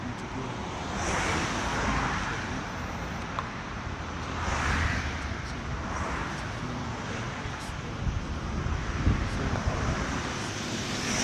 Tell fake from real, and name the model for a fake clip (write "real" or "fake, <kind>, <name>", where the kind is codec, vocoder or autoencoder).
fake, vocoder, BigVGAN v2